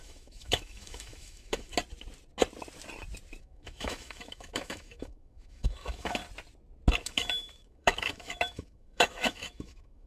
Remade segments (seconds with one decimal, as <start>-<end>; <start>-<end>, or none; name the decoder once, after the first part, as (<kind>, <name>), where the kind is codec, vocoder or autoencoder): 0.0-1.7 (autoencoder, DAC-VAE); 3.4-6.2; 7.0-10.1